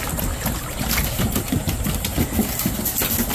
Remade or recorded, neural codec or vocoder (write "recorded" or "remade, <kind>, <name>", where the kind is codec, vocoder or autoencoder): recorded